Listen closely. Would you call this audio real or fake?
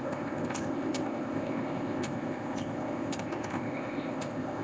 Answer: fake